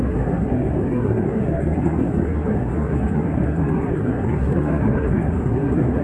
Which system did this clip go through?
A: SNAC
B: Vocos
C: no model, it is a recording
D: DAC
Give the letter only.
A